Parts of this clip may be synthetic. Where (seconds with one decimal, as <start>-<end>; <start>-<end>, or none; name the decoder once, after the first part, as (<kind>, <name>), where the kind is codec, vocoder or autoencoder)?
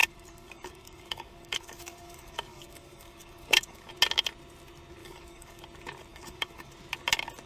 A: 0.0-3.9 (codec, DAC); 5.0-5.6; 6.1-6.7